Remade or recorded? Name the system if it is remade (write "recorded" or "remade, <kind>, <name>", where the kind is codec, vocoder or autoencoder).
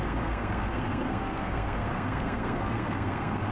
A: remade, codec, SNAC